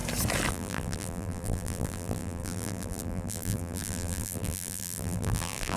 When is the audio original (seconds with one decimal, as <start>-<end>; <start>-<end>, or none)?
0.0-0.5